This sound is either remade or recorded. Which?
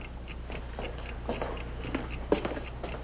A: recorded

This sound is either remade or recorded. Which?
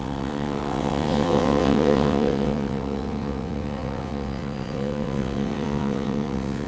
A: remade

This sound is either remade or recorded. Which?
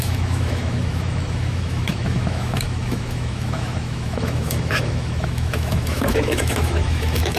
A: remade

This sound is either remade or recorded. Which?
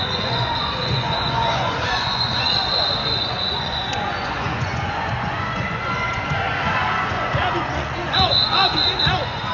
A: remade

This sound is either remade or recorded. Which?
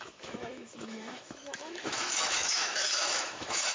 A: remade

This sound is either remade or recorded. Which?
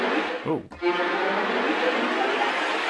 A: recorded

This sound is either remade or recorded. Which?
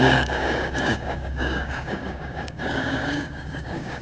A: remade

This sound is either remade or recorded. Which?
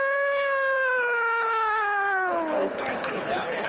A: remade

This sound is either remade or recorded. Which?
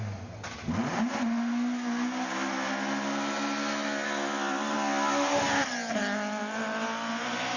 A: recorded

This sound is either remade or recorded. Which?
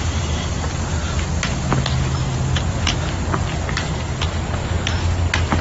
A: recorded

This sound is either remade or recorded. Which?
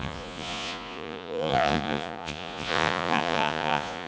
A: remade